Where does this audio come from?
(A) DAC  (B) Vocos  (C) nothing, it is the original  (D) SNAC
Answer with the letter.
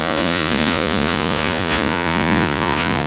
B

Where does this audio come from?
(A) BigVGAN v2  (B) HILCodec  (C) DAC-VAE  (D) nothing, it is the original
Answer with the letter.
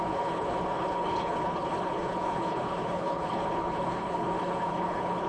B